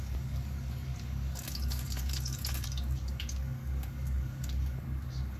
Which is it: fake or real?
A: fake